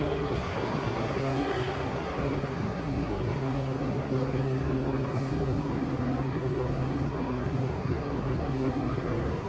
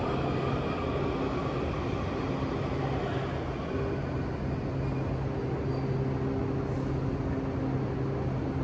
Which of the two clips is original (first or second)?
second